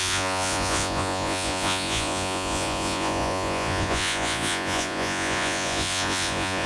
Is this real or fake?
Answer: fake